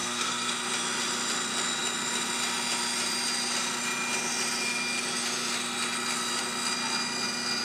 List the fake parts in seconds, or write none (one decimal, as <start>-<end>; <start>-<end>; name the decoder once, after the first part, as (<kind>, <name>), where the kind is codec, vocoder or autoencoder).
0.0-0.5 (codec, SNAC)